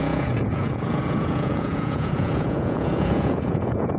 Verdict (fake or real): fake